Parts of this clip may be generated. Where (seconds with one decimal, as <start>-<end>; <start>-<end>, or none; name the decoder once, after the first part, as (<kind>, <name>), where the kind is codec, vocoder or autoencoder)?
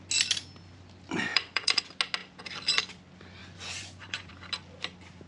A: 1.3-1.8 (vocoder, Vocos); 3.4-4.3